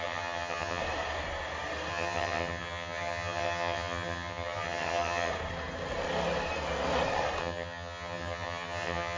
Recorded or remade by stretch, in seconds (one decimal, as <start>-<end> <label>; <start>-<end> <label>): 0.0-0.8 remade; 0.8-1.9 recorded; 1.9-5.3 remade; 5.3-7.4 recorded; 7.4-9.2 remade